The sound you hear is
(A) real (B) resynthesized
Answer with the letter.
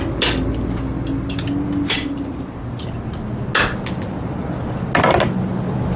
A